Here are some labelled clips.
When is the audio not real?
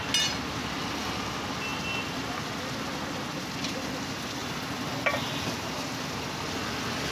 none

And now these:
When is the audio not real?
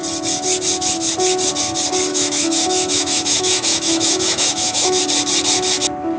2.1-5.0 (autoencoder, DAC-VAE)